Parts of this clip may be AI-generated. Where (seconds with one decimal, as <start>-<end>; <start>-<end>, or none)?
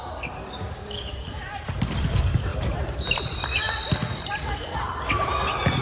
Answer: 0.4-1.4